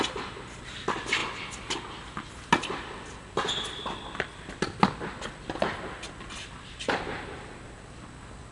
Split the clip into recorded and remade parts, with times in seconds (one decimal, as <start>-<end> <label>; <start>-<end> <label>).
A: 0.0-8.5 recorded